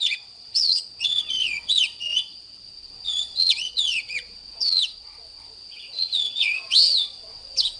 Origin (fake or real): fake